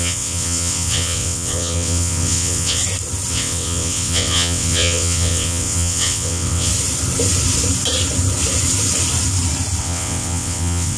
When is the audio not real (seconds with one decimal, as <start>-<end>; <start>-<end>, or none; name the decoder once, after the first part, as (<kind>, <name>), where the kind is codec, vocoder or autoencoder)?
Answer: 0.0-2.8 (vocoder, WaveNeXt); 3.3-6.7; 9.8-11.0